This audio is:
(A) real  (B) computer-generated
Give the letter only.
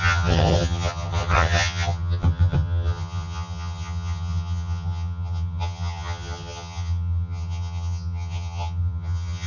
B